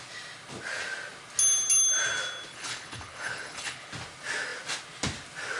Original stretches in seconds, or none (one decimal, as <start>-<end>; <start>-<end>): 0.0-2.5; 3.9-5.6